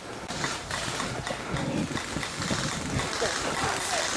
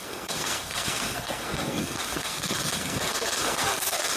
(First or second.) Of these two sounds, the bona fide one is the first